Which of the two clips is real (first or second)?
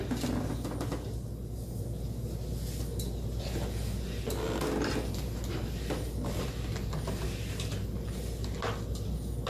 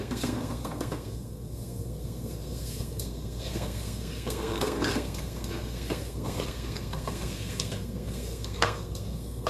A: first